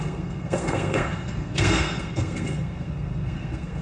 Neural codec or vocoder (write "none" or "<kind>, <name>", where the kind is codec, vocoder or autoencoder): codec, SNAC